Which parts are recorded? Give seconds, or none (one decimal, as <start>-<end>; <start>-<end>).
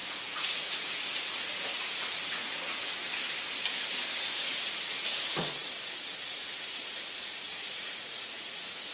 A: 3.0-4.2